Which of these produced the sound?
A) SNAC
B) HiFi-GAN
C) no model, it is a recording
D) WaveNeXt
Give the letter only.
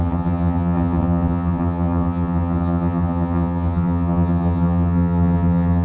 B